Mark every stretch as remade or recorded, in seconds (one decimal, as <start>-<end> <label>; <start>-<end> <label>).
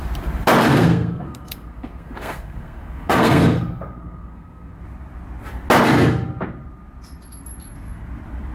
0.0-0.7 recorded; 0.7-4.8 remade; 4.8-8.5 recorded